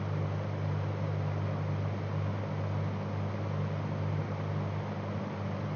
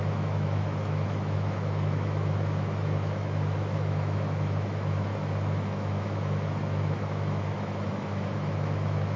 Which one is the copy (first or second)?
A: second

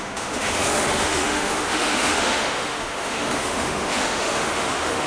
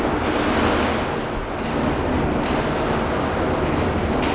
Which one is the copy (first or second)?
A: first